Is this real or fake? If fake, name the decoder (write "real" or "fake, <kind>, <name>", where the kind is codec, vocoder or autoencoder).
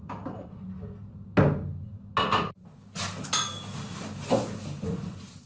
real